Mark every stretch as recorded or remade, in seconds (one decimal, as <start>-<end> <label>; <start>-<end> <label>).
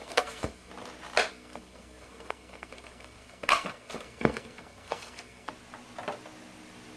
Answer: 0.0-0.7 remade; 0.7-1.3 recorded; 1.3-5.5 remade; 5.5-7.0 recorded